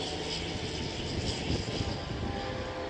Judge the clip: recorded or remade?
recorded